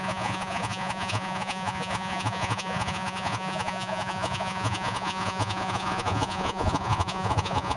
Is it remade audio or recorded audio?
remade